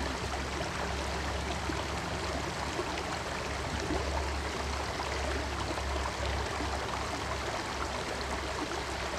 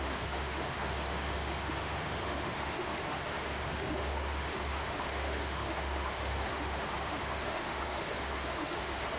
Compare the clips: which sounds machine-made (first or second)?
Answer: second